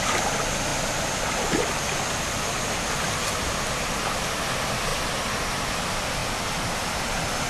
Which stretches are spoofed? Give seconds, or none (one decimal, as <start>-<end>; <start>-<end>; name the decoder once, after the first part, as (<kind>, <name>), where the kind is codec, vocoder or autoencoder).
none